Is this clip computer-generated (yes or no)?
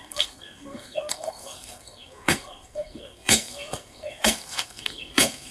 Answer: yes